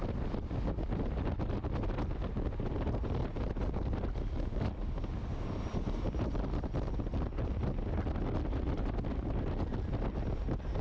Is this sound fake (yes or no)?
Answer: no